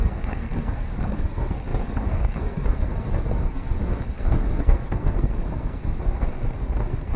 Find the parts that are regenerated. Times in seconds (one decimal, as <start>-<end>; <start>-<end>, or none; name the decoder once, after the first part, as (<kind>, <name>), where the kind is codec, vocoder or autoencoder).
0.0-7.2 (codec, SNAC)